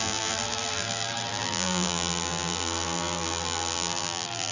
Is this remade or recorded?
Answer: remade